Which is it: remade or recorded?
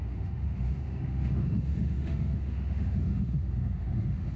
remade